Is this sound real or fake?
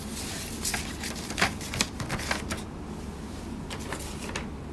real